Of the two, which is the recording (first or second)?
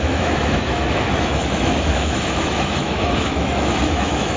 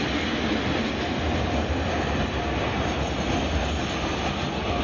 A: second